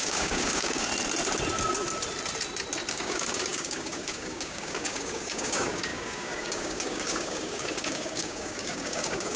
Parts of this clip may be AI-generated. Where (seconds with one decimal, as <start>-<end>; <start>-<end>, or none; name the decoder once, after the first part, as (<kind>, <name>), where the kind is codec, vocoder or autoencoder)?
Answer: 0.0-0.9 (codec, DAC); 2.9-9.4